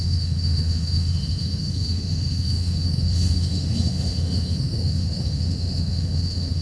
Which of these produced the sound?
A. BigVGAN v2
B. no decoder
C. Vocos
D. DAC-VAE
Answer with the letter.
D